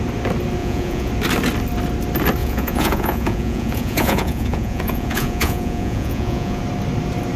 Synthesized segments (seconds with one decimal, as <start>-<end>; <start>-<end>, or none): 0.6-1.1; 2.4-6.6